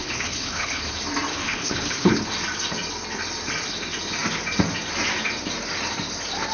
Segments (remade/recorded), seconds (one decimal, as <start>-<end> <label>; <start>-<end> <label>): 0.0-0.9 remade; 0.9-1.3 recorded; 1.3-2.3 remade; 2.3-6.5 recorded